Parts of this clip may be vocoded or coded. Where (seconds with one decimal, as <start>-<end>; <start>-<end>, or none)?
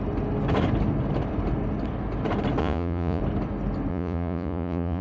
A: 2.6-3.2; 3.9-5.0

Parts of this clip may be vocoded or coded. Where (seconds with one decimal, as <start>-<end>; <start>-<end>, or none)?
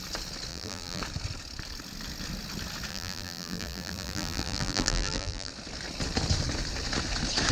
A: 0.5-1.0; 2.9-5.5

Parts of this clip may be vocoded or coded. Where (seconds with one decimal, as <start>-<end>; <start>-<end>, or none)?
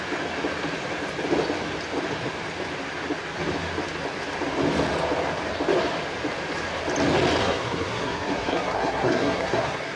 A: 7.4-10.0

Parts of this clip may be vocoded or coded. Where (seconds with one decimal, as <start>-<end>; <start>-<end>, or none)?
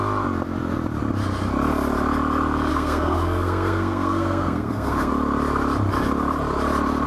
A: 2.7-5.1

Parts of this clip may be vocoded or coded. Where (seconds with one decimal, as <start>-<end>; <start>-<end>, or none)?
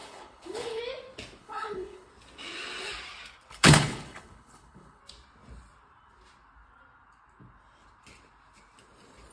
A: 0.0-0.8; 1.4-2.1; 3.5-5.0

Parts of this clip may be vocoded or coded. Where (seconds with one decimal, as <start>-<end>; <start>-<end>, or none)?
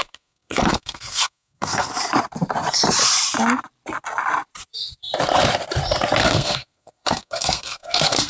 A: 0.0-1.9; 6.2-8.3